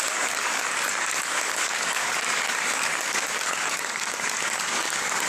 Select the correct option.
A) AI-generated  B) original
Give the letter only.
A